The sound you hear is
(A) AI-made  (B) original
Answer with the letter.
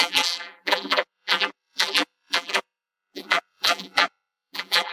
A